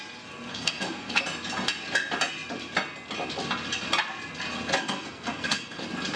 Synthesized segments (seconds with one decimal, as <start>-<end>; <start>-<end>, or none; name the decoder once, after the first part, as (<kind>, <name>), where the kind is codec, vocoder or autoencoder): 0.5-1.2 (codec, SNAC); 4.8-5.8